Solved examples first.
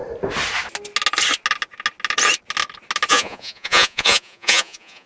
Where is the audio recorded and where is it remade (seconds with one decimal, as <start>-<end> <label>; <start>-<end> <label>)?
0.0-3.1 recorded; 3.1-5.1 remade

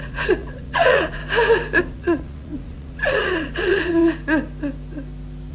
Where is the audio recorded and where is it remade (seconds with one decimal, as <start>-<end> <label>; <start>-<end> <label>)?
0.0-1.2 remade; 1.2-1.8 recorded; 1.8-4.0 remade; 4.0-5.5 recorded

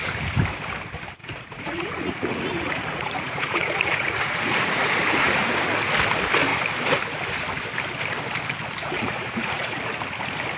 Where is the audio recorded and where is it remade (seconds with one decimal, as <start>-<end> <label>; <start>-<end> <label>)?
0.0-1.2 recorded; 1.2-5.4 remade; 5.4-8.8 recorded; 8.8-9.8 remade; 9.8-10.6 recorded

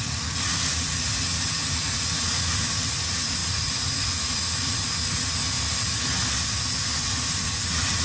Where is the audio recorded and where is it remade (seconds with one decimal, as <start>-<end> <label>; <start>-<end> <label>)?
0.0-5.4 remade; 5.4-7.0 recorded; 7.0-8.0 remade